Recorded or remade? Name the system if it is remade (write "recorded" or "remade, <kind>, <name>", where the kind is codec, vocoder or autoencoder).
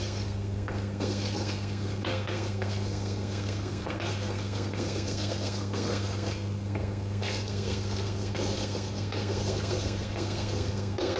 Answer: remade, codec, SNAC